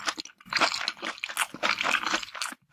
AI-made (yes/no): no